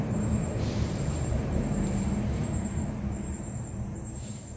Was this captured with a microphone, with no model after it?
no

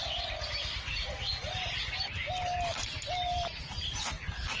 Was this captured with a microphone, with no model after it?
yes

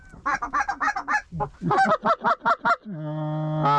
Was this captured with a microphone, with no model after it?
yes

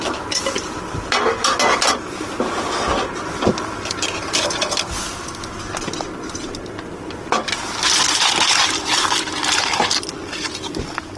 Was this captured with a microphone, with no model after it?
yes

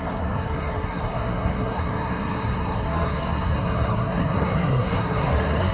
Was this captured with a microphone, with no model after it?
no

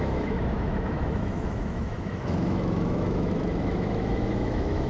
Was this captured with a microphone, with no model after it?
no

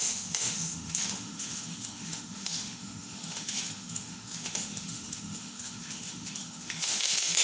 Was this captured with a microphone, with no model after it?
no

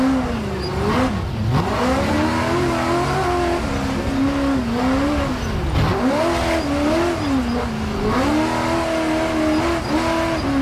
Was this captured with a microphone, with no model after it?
yes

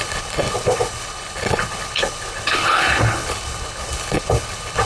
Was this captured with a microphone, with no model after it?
no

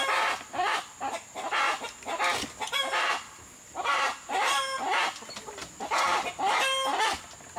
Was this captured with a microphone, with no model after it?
yes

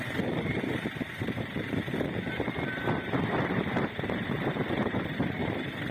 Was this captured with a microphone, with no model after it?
no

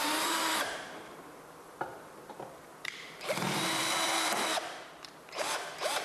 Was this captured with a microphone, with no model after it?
no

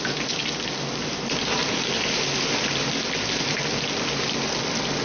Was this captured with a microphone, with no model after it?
yes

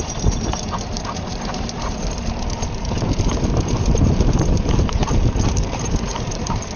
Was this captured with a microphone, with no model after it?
no